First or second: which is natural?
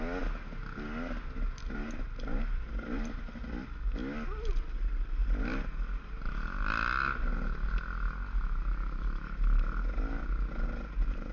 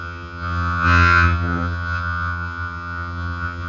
first